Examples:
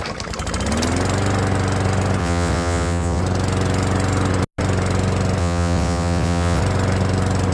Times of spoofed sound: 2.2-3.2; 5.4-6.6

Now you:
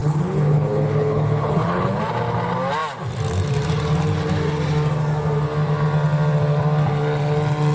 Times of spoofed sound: 0.0-2.0

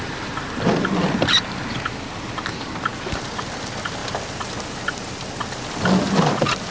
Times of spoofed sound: 0.0-4.0; 5.7-6.7

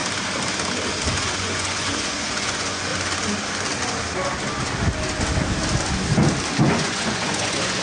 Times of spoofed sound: 1.1-2.9; 6.6-7.8

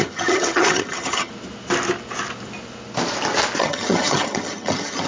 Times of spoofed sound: 0.0-1.3; 3.6-5.1

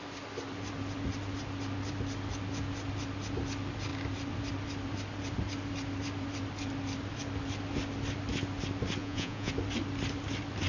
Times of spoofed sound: 9.0-9.5

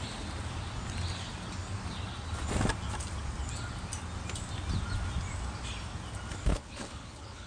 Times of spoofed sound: 6.5-7.5